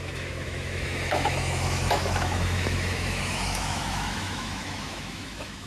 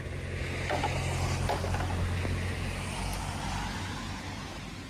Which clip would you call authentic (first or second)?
second